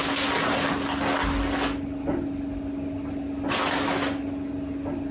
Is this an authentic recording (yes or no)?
yes